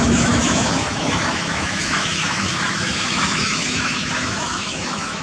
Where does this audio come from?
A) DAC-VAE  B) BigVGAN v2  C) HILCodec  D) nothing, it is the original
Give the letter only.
A